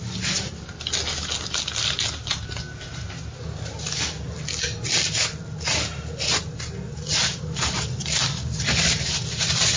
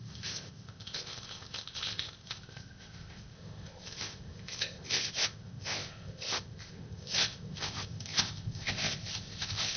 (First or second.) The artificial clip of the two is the second